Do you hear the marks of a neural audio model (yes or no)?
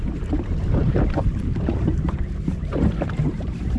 yes